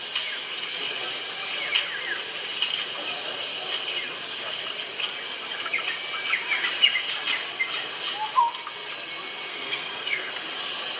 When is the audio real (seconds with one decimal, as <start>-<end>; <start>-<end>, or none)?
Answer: 0.0-9.5; 10.3-11.0